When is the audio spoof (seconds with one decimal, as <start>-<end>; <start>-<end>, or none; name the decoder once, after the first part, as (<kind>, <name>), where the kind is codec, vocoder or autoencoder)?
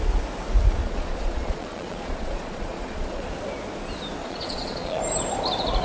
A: 0.8-3.3 (vocoder, Vocos); 4.2-5.0